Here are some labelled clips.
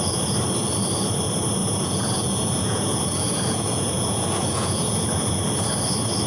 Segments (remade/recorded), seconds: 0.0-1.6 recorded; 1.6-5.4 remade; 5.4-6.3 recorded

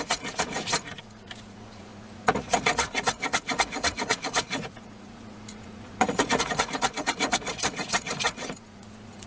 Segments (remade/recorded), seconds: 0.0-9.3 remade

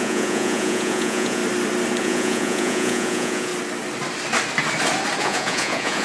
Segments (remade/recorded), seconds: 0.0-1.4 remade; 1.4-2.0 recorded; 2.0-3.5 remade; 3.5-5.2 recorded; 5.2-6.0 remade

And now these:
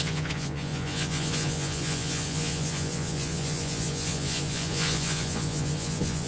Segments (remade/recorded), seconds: 0.0-6.3 remade